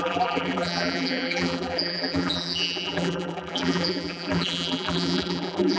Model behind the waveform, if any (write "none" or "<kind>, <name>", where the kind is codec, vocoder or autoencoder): vocoder, BigVGAN v2